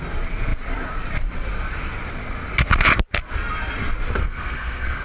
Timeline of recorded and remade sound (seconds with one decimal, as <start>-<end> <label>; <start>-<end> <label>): 0.0-4.2 recorded; 4.2-5.0 remade